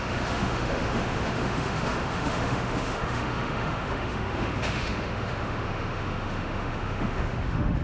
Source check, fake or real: fake